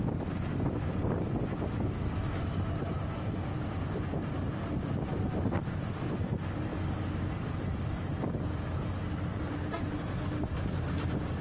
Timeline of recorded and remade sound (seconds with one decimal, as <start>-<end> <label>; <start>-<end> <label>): 0.0-4.6 recorded; 4.6-5.2 remade; 5.2-6.7 recorded; 6.7-8.3 remade; 8.3-11.4 recorded